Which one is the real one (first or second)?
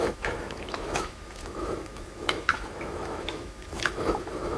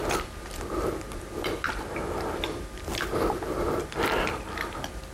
second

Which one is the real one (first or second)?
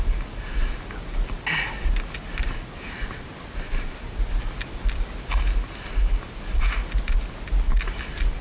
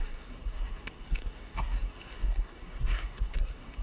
first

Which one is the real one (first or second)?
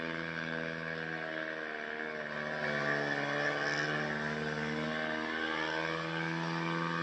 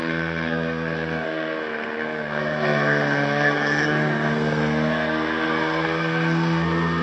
first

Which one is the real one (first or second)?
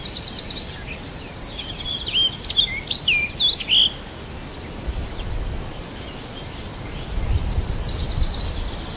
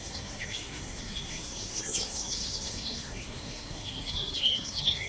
first